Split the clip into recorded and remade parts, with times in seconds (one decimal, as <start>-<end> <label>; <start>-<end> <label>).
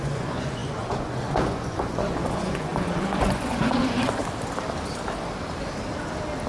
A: 0.0-4.2 remade; 4.2-6.5 recorded